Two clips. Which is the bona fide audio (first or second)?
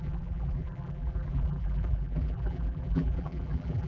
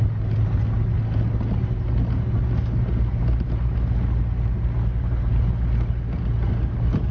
second